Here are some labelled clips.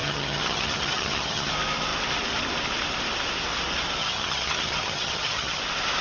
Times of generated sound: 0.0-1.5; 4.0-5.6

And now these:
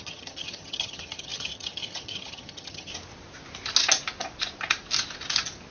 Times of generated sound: 0.0-2.9

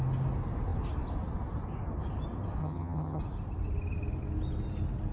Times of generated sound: 2.6-3.2

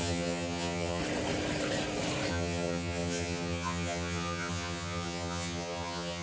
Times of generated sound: 0.0-1.0; 2.3-6.2

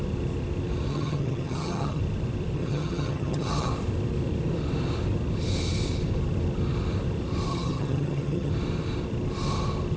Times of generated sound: 0.9-2.0; 2.6-3.7; 7.5-8.5

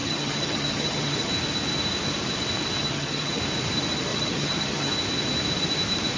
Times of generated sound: 0.0-1.3; 2.8-3.4; 4.1-4.9

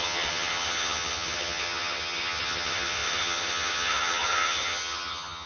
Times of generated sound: 0.0-5.5

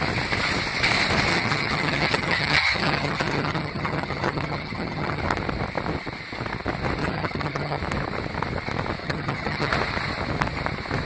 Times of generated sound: 1.3-5.2; 7.0-7.8; 9.0-9.7